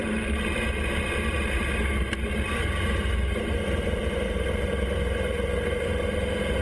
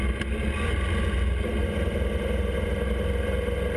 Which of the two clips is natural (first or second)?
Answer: second